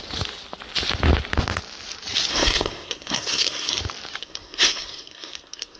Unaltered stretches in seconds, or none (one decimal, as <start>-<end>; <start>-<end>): 0.0-2.3; 3.8-4.2